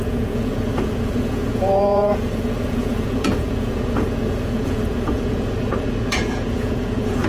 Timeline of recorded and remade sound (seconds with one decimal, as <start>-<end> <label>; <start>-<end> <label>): 0.0-7.3 remade